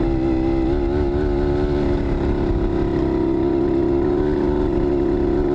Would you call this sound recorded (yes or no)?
yes